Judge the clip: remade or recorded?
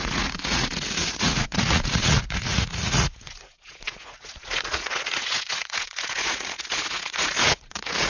remade